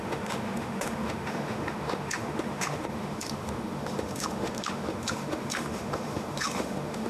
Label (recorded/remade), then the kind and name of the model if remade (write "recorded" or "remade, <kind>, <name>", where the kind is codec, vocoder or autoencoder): remade, autoencoder, DAC-VAE